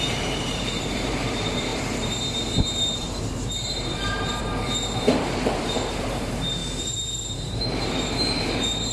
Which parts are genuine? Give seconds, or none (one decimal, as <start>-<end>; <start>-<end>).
none